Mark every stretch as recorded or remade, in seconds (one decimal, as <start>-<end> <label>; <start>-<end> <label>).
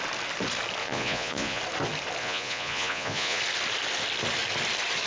0.0-0.8 recorded; 0.8-1.6 remade; 1.6-2.2 recorded; 2.2-3.4 remade; 3.4-5.1 recorded